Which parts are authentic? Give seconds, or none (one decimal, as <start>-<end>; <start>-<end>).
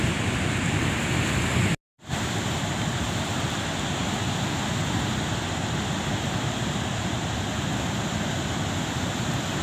0.0-9.6